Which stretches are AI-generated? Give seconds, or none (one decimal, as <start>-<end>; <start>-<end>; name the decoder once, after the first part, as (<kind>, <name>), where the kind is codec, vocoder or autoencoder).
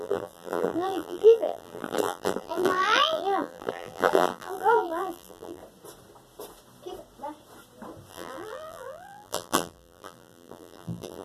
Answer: 0.0-5.6 (vocoder, BigVGAN v2); 8.1-11.2